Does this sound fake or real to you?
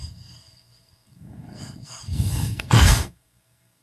fake